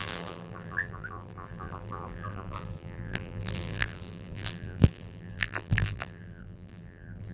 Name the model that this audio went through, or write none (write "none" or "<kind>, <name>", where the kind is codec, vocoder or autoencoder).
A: vocoder, BigVGAN v2